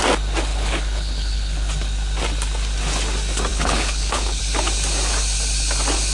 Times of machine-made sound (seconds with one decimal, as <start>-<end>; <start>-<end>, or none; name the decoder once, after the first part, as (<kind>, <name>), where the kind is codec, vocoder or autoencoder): 0.5-1.7 (codec, HILCodec); 3.5-4.4